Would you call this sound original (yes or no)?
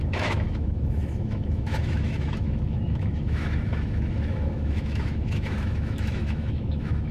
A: no